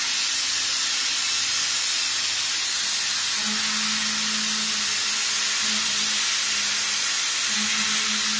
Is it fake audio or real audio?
real